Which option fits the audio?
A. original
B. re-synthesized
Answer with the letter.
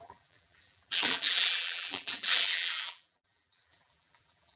B